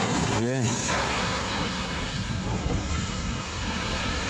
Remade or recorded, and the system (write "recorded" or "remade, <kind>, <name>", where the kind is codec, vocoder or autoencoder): remade, codec, SNAC